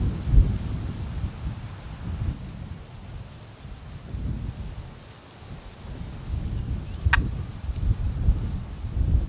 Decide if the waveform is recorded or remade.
recorded